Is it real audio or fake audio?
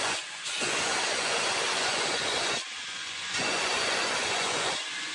fake